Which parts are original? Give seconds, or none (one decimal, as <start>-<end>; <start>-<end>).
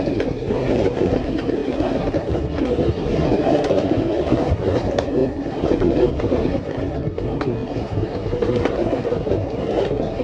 none